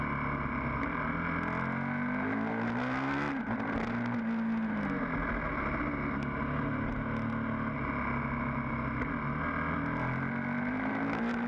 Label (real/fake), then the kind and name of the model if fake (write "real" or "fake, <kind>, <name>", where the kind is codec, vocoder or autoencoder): real